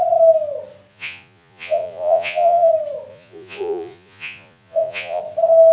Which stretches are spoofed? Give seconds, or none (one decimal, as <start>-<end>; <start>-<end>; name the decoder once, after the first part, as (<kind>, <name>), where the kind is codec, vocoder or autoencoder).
0.9-2.7 (vocoder, Vocos); 3.1-5.2

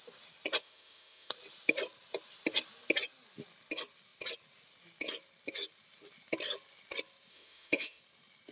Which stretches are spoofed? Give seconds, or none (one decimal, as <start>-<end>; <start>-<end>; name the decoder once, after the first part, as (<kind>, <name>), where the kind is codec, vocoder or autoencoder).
0.6-1.3 (autoencoder, DAC-VAE); 7.3-8.0

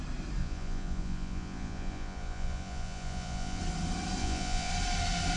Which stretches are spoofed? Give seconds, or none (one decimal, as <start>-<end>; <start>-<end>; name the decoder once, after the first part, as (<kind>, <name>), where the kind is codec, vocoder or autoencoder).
0.4-3.6 (vocoder, Vocos); 4.2-4.7

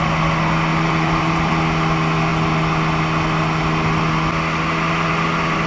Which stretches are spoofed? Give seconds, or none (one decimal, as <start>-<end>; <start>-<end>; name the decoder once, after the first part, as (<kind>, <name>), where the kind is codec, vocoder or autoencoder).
0.7-1.5 (vocoder, BigVGAN v2)

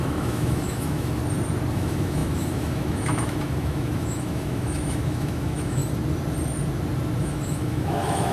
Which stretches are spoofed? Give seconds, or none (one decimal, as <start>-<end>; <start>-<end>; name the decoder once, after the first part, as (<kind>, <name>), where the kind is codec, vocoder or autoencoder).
0.0-1.2 (autoencoder, DAC-VAE); 1.7-5.8; 7.2-8.3

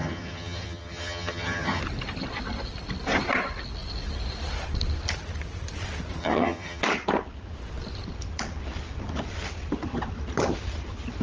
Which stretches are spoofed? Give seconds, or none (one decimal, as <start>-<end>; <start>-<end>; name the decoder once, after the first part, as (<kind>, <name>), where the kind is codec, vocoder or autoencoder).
0.0-1.8 (vocoder, HiFi-GAN); 6.2-6.8

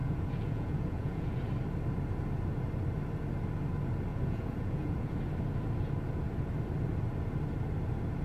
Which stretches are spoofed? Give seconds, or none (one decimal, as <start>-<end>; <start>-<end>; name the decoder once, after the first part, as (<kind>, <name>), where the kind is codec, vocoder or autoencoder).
0.0-1.4 (vocoder, Vocos); 4.1-5.2